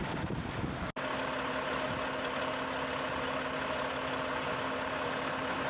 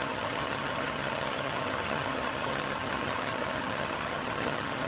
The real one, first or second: first